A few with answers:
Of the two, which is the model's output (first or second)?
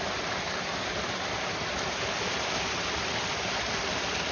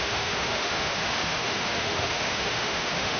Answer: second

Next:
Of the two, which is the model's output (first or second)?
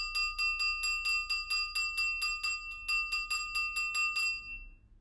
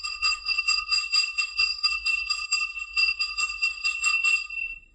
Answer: second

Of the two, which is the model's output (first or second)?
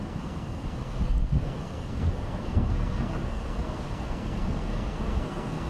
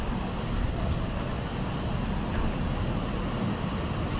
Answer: first